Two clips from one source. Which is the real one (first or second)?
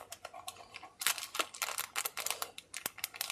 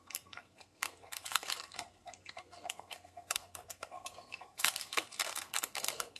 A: first